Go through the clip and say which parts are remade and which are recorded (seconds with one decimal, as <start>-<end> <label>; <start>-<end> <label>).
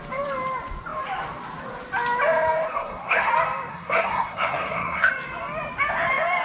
0.0-2.7 recorded; 2.7-3.3 remade; 3.3-3.7 recorded; 3.7-5.1 remade; 5.1-6.4 recorded